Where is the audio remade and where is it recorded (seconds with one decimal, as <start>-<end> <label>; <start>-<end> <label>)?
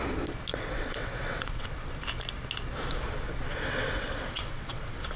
0.0-0.5 recorded; 0.5-1.9 remade; 1.9-3.5 recorded; 3.5-4.8 remade; 4.8-5.2 recorded